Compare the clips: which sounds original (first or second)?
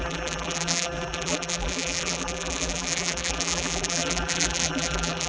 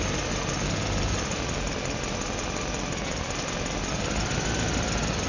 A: second